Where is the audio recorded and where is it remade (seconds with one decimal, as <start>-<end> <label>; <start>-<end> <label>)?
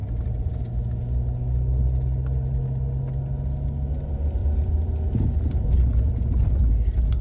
0.0-0.6 remade; 0.6-4.4 recorded; 4.4-5.9 remade; 5.9-7.2 recorded